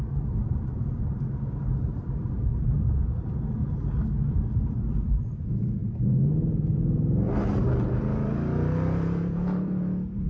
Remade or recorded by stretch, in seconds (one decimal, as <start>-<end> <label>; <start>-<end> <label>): 0.0-3.6 remade; 3.6-4.6 recorded; 4.6-10.3 remade